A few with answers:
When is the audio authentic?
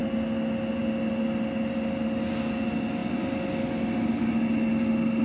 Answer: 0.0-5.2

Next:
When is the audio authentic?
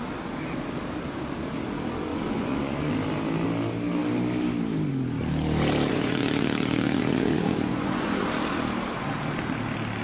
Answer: 0.0-2.1; 2.9-5.9; 8.3-10.0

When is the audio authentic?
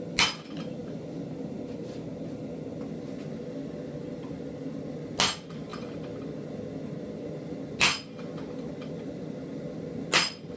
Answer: 0.0-10.6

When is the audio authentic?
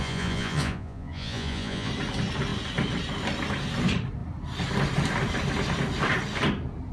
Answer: 1.9-6.9